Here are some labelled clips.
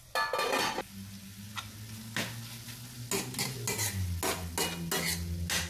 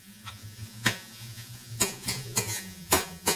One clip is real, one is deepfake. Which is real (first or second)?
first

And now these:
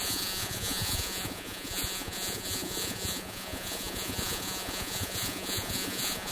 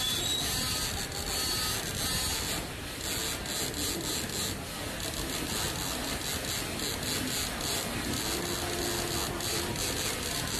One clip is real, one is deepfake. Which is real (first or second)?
second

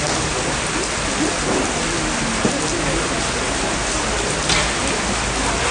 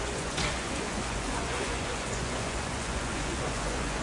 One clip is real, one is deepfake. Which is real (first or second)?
first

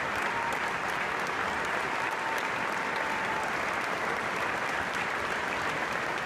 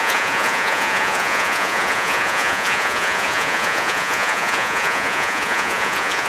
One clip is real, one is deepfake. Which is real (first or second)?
first